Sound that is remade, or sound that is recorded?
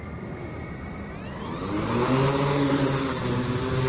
recorded